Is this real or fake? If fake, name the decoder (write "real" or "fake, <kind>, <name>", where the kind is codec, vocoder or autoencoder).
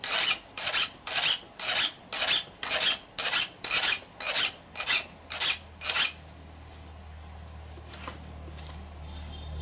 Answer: real